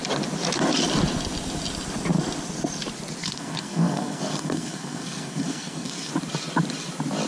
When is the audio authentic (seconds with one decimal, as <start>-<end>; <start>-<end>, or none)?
0.0-3.2; 6.1-7.3